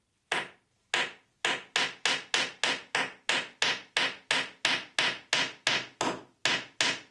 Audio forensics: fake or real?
real